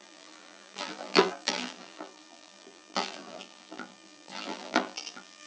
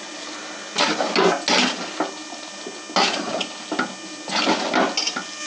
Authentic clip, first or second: second